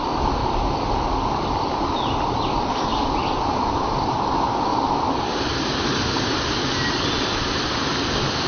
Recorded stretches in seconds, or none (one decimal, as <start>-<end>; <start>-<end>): 0.0-2.9; 4.1-4.7; 5.5-8.5

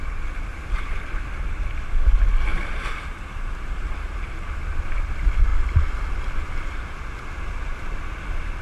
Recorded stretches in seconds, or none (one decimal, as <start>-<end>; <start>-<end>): 0.0-0.5; 1.0-2.5; 3.7-8.6

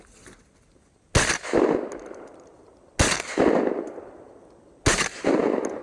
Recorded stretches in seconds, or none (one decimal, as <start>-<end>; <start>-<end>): 0.0-5.8

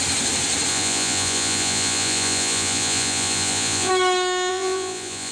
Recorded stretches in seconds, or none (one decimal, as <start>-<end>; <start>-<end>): 0.0-0.7; 3.9-4.5

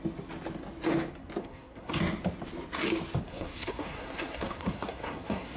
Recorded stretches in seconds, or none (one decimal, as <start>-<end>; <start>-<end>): 0.0-1.4; 1.9-3.3

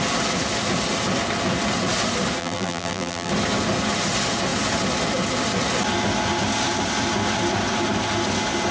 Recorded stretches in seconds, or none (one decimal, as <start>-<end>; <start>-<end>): 0.0-2.4; 3.3-8.7

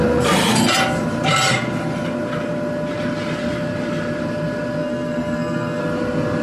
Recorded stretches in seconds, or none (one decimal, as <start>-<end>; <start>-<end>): 0.0-4.8; 5.8-6.4